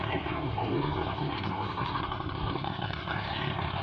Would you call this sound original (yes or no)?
no